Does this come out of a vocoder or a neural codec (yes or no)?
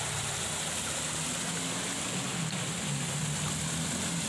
no